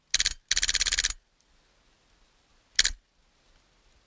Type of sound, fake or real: real